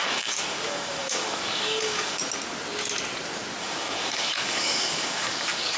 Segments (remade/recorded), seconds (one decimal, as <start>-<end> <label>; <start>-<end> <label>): 0.0-2.2 remade; 2.2-3.6 recorded; 3.6-5.8 remade